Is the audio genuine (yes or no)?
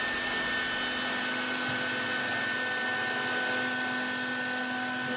yes